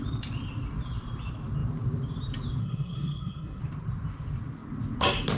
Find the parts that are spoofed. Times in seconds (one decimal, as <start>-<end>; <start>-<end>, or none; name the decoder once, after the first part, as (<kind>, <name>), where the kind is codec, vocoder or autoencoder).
2.6-3.6 (codec, SNAC)